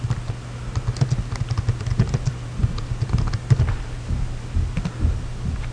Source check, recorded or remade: recorded